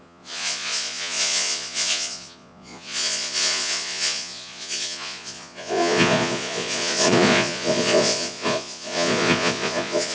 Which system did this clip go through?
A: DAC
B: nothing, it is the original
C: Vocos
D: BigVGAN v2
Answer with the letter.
C